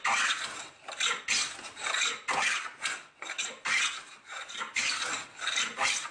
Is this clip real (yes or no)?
yes